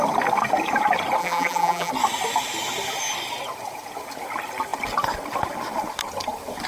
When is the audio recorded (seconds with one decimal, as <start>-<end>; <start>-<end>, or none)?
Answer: 0.0-1.2; 1.9-6.7